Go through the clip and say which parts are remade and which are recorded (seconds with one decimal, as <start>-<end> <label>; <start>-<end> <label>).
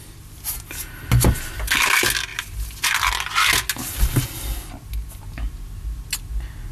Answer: 0.0-6.7 recorded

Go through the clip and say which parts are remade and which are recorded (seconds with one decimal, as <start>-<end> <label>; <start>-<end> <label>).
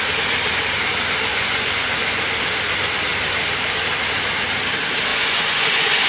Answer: 0.0-1.3 recorded; 1.3-2.2 remade; 2.2-5.1 recorded; 5.1-6.1 remade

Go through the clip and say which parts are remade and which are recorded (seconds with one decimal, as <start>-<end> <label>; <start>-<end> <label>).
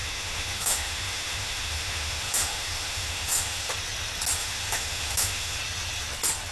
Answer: 0.0-3.7 remade; 3.7-4.4 recorded; 4.4-5.6 remade; 5.6-6.5 recorded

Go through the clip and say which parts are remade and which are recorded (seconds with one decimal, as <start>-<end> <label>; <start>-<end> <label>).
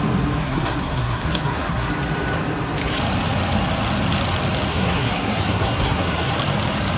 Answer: 0.0-0.4 recorded; 0.4-1.9 remade; 1.9-4.7 recorded; 4.7-6.3 remade; 6.3-7.0 recorded